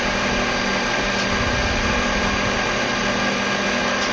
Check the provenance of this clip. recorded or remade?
recorded